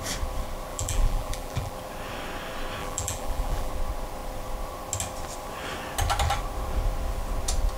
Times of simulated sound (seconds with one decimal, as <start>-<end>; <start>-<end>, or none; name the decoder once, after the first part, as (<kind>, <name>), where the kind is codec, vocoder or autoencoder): 0.7-1.7 (vocoder, BigVGAN v2); 2.8-3.7